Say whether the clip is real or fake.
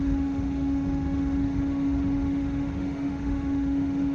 fake